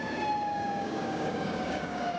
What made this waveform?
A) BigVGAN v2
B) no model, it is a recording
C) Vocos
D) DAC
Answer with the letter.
D